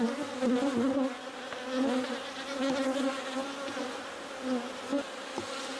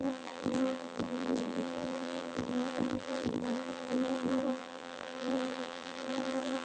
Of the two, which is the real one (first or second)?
first